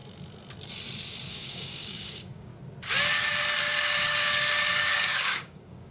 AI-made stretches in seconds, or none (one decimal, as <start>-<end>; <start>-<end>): 1.3-2.5; 3.6-5.9